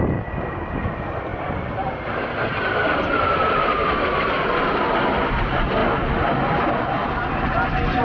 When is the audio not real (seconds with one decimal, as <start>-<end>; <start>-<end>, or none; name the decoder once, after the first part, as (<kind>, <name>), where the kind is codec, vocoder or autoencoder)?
none